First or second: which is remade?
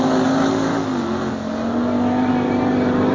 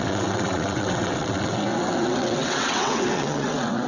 second